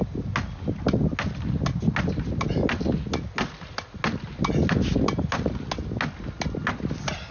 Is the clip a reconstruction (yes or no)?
no